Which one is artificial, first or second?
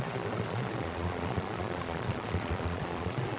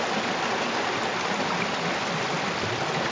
first